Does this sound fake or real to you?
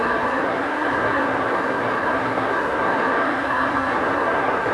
fake